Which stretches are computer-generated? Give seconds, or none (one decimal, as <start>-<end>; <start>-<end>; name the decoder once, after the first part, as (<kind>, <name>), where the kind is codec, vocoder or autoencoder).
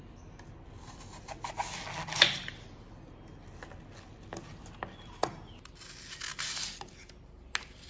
none